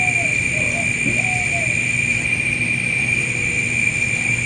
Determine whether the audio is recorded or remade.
recorded